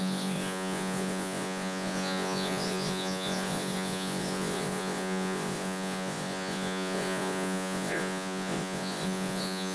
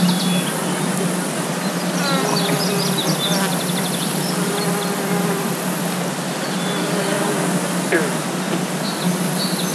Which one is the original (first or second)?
second